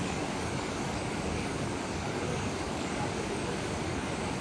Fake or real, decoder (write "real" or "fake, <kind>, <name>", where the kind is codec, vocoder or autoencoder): fake, codec, DAC